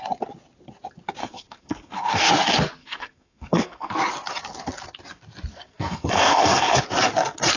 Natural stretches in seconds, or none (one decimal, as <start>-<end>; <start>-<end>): 0.0-1.2; 2.3-2.8; 3.9-5.5; 6.8-7.6